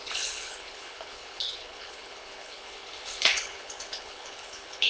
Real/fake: fake